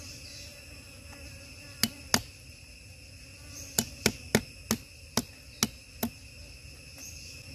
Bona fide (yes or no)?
yes